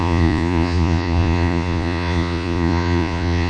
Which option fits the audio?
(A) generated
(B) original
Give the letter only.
A